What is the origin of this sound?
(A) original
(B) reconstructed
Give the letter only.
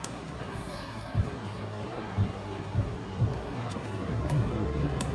B